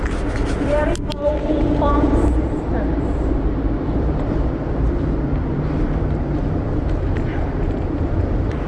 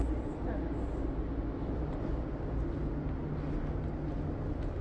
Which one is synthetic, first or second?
first